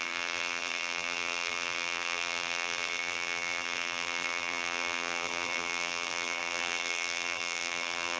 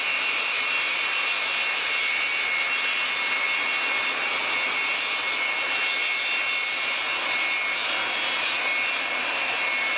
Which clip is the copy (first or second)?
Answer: first